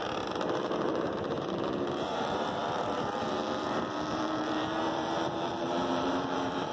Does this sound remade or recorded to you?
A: remade